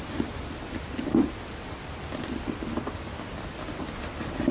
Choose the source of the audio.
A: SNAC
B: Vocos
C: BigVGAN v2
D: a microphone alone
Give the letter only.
D